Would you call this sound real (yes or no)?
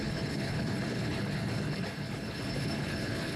no